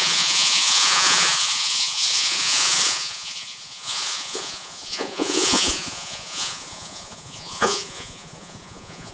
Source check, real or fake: fake